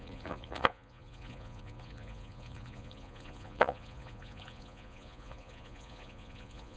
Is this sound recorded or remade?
remade